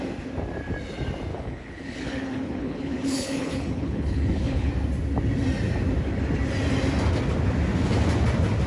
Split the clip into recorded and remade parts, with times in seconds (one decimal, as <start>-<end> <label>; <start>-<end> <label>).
0.0-1.3 recorded; 1.3-4.7 remade; 4.7-8.7 recorded